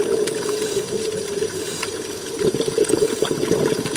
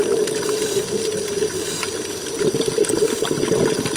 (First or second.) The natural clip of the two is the second